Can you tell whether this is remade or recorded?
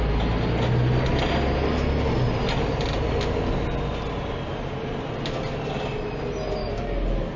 recorded